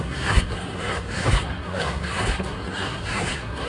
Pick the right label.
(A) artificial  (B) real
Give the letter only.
A